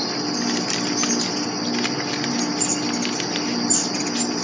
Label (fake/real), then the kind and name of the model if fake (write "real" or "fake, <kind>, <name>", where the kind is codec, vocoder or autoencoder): real